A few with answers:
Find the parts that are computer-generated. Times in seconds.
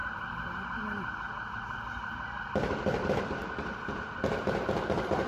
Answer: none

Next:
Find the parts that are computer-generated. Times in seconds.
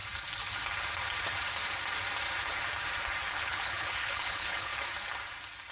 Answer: 3.3-4.7 (codec, HILCodec)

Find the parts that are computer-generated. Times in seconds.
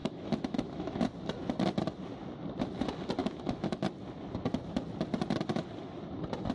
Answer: 0.0-1.0 (autoencoder, DAC-VAE); 3.2-3.8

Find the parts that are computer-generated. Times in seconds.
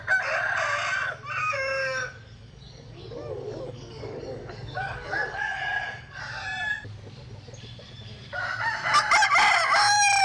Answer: 1.4-6.2 (codec, DAC)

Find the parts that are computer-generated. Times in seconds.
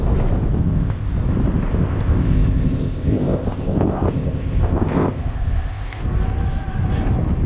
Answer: 0.6-1.1 (codec, ZipCodec); 1.7-6.0